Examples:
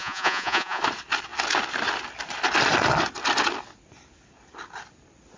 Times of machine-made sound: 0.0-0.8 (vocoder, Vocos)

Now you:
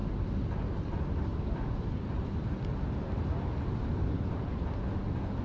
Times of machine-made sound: none

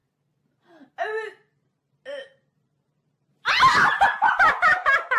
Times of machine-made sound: none

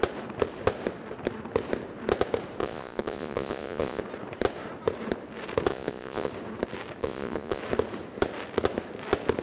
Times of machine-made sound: 2.6-4.0 (vocoder, Vocos); 5.7-6.3; 7.0-7.6

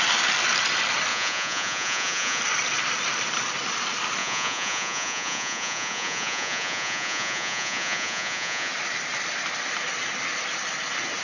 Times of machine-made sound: 1.1-2.4 (vocoder, Vocos); 4.2-8.7

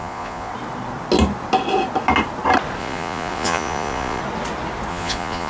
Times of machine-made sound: 0.0-0.5 (vocoder, Vocos); 2.8-4.2; 4.9-5.5